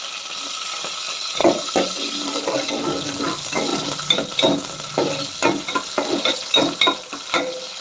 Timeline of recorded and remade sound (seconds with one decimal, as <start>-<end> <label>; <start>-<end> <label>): 0.0-7.8 recorded